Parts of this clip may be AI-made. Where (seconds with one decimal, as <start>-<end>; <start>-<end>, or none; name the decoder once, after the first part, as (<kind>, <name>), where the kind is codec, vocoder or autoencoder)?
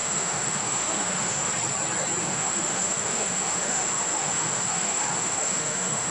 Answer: 0.0-1.5 (autoencoder, DAC-VAE); 2.2-6.1